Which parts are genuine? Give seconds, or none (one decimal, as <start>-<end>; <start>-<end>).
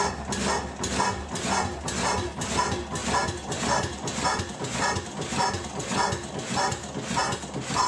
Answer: 0.0-7.9